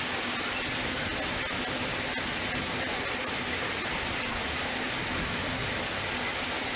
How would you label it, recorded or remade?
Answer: recorded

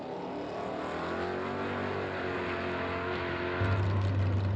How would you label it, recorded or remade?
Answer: recorded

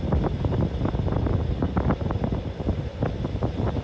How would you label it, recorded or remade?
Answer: recorded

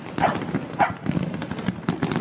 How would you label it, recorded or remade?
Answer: recorded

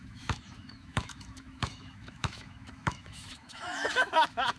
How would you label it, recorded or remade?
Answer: remade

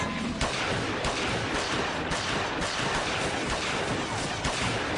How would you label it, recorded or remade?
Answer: recorded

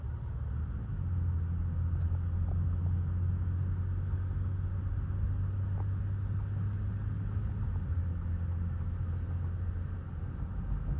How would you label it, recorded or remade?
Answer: recorded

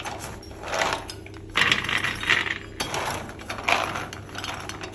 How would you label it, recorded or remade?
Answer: recorded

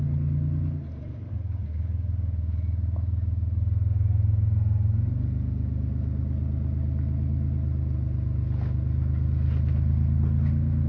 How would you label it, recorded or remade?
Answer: recorded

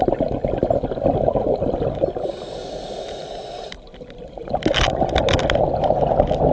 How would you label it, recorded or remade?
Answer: recorded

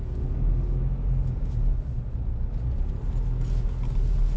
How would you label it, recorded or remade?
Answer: recorded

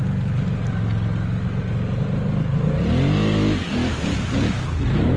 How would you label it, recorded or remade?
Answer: recorded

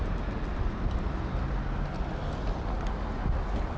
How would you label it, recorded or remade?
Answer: recorded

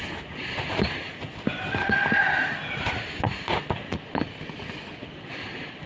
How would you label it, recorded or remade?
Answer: recorded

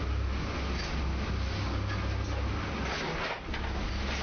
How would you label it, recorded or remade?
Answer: recorded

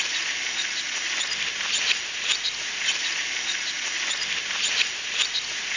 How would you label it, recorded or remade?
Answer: recorded